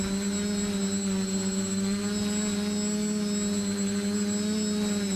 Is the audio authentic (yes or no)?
yes